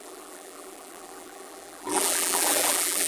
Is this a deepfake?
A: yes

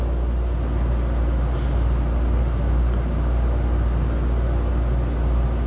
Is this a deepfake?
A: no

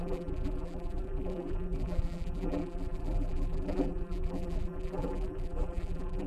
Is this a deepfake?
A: yes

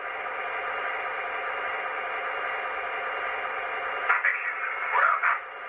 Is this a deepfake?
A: no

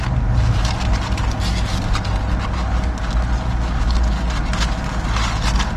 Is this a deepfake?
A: no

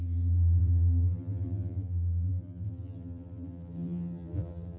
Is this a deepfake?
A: yes